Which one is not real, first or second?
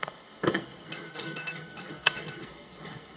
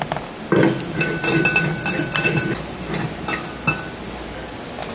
first